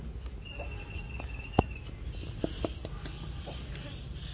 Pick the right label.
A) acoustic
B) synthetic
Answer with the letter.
A